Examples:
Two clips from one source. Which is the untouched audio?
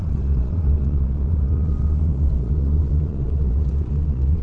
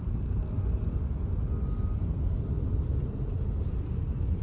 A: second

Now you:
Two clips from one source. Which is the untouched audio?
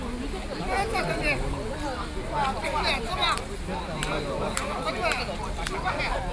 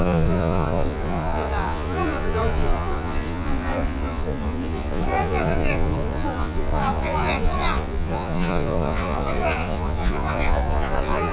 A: first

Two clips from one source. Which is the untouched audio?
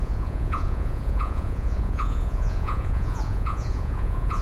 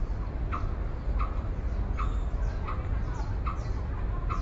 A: second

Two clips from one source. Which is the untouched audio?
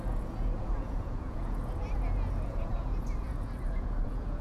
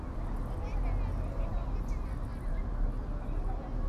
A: second